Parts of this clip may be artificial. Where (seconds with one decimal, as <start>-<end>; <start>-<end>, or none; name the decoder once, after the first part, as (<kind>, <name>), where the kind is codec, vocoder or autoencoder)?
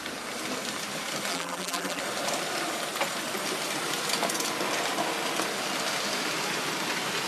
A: 1.3-2.0 (vocoder, BigVGAN v2)